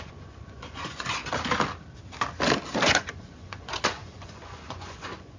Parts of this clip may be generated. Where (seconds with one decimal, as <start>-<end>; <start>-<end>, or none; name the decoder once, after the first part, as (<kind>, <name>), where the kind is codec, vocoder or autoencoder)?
0.0-1.2 (vocoder, Vocos); 2.9-5.4